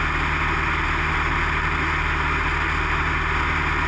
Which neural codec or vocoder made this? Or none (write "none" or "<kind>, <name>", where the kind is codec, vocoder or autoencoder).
none